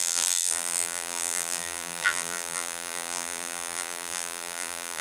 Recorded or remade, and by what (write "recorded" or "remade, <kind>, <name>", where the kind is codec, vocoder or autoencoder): remade, vocoder, BigVGAN v2